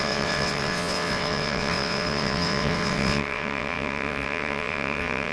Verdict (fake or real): fake